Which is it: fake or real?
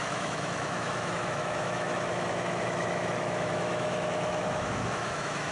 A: fake